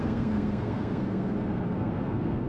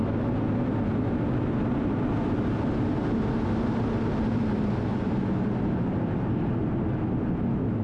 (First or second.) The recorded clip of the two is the second